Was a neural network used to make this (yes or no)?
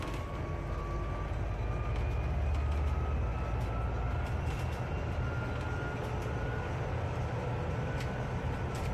no